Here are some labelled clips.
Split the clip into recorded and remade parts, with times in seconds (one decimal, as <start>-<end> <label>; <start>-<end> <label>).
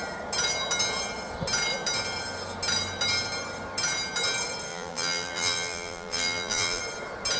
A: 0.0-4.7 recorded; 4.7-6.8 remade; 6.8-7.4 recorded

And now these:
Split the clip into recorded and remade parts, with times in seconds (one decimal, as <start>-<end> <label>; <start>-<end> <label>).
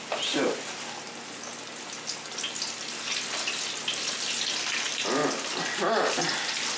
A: 0.0-6.8 recorded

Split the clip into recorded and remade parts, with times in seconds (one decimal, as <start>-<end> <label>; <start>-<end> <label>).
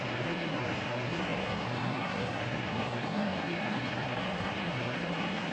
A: 0.0-5.5 remade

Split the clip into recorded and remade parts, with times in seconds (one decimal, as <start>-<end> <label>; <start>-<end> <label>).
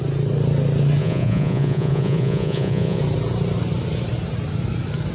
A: 0.0-1.0 recorded; 1.0-3.0 remade; 3.0-5.1 recorded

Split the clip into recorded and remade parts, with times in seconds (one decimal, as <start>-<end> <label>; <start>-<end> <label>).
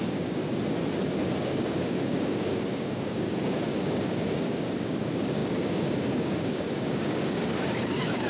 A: 0.0-0.4 remade; 0.4-1.4 recorded; 1.4-8.3 remade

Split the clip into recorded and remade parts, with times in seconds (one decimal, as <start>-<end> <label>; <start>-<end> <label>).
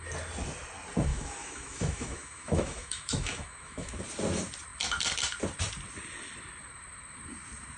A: 0.0-1.1 recorded; 1.1-4.0 remade; 4.0-7.8 recorded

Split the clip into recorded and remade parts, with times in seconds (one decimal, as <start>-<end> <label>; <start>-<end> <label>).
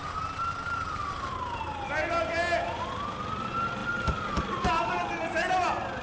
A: 0.0-1.0 recorded; 1.0-1.6 remade; 1.6-6.0 recorded